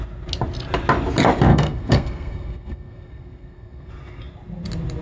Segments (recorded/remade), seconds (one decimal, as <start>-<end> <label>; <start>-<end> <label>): 0.0-1.5 recorded; 1.5-3.9 remade; 3.9-5.0 recorded